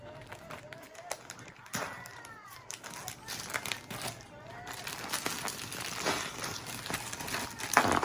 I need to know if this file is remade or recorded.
recorded